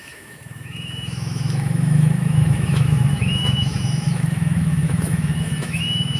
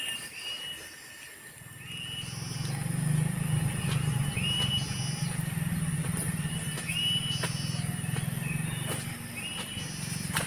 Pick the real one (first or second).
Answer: second